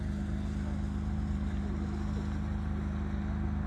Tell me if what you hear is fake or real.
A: real